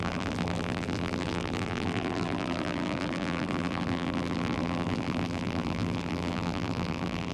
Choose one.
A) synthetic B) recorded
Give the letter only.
A